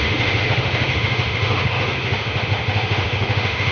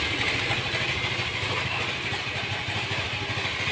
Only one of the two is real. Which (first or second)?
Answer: second